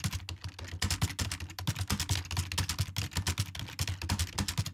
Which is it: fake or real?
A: real